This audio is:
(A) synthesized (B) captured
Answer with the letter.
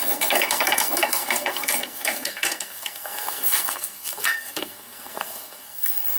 A